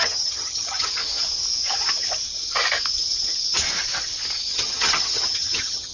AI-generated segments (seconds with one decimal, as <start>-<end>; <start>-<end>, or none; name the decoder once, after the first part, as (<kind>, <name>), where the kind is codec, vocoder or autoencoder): 0.0-1.0 (vocoder, HiFi-GAN); 4.5-5.9